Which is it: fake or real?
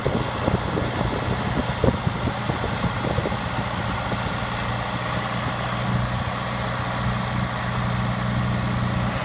real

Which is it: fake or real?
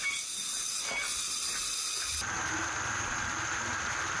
real